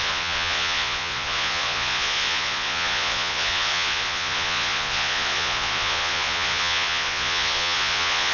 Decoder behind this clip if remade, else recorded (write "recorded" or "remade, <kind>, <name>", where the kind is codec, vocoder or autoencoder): remade, vocoder, Vocos